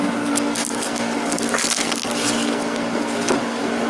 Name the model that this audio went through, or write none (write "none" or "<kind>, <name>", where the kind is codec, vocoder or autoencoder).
codec, SNAC